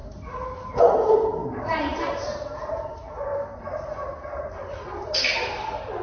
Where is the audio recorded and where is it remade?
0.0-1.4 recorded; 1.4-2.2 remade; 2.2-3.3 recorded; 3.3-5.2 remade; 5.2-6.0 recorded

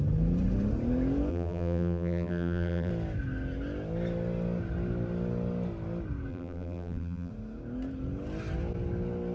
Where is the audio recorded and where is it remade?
0.0-1.3 recorded; 1.3-2.9 remade; 2.9-6.3 recorded; 6.3-7.3 remade; 7.3-9.3 recorded

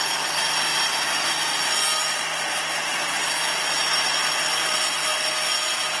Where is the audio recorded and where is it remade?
0.0-2.9 recorded; 2.9-3.6 remade; 3.6-4.5 recorded; 4.5-5.1 remade; 5.1-6.0 recorded

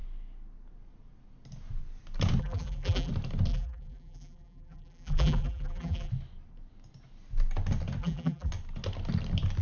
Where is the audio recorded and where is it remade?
0.0-2.4 recorded; 2.4-3.1 remade; 3.1-3.5 recorded; 3.5-6.1 remade; 6.1-8.0 recorded; 8.0-8.5 remade; 8.5-9.6 recorded

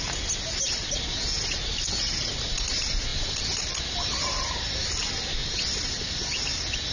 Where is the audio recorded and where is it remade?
0.0-3.1 recorded; 3.1-3.8 remade; 3.8-5.4 recorded; 5.4-6.0 remade; 6.0-6.9 recorded